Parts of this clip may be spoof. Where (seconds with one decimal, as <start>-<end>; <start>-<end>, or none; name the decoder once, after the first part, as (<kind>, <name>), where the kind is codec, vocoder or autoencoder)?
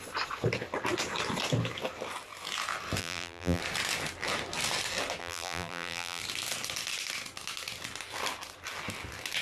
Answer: 3.0-3.6 (vocoder, BigVGAN v2); 5.2-6.2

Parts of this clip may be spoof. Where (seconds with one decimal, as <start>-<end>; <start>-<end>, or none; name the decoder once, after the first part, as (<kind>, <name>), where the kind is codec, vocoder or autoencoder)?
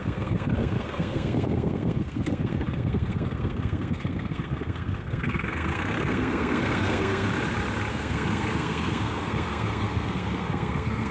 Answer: 0.0-7.3 (codec, SNAC); 7.9-11.1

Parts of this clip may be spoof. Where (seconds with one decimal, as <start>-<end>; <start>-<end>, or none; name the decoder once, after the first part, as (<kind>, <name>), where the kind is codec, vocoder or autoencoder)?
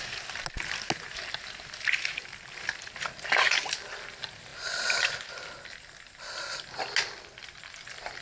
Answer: none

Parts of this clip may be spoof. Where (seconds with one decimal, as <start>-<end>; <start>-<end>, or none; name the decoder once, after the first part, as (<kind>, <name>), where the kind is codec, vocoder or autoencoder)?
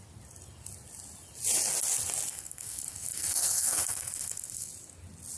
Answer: 2.3-4.7 (codec, SNAC)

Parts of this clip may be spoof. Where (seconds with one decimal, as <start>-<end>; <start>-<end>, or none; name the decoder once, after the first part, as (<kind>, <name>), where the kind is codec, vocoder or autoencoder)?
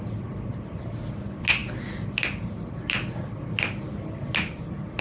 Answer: none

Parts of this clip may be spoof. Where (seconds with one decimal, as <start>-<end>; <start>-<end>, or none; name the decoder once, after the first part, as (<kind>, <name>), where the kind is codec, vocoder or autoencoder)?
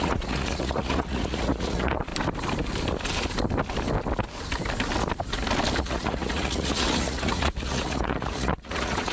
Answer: 0.0-2.1 (vocoder, Vocos); 5.8-9.1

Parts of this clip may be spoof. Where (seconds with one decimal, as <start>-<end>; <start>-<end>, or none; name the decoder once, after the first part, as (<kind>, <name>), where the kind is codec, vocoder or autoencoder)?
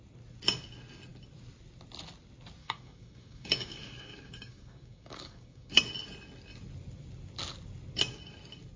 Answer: 2.6-5.8 (codec, DAC)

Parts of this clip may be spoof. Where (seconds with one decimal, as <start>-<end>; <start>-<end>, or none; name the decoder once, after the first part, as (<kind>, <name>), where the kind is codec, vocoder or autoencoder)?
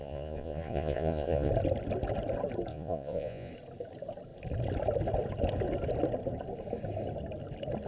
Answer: 0.0-1.5 (vocoder, Vocos); 2.7-3.5